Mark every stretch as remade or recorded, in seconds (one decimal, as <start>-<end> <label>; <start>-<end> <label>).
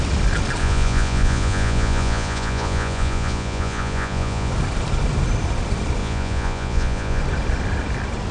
0.0-0.6 recorded; 0.6-4.5 remade; 4.5-6.0 recorded; 6.0-7.2 remade; 7.2-8.3 recorded